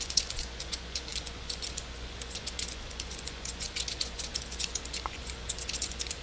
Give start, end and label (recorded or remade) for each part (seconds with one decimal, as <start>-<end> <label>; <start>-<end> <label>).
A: 0.0-6.2 remade